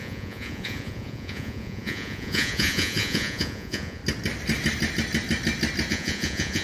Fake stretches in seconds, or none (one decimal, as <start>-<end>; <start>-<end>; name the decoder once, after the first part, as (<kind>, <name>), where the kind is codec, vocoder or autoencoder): 0.0-4.0 (vocoder, Vocos); 5.9-6.6